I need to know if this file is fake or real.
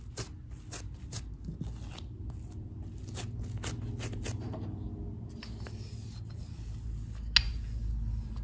real